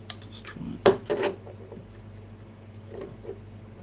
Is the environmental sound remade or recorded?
recorded